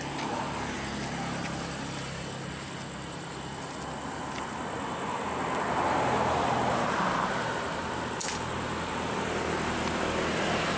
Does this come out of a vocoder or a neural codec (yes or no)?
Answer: no